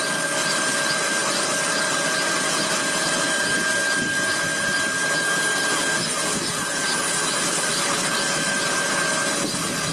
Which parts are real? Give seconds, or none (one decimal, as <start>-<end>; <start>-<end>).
0.0-9.9